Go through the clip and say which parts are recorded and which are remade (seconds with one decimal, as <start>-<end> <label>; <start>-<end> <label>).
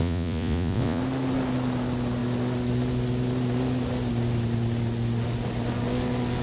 0.0-1.0 remade; 1.0-6.4 recorded